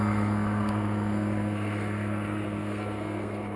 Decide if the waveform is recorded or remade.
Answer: remade